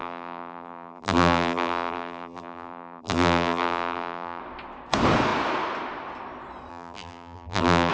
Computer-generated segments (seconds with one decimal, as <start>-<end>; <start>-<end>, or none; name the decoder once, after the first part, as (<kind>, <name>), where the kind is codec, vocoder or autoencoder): 0.0-4.4 (vocoder, BigVGAN v2); 6.7-7.9